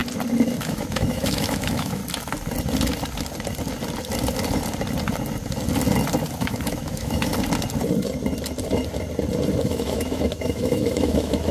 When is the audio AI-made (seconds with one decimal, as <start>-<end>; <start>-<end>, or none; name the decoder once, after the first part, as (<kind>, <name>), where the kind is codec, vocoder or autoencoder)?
0.6-2.0 (autoencoder, DAC-VAE); 6.4-7.3; 9.6-11.5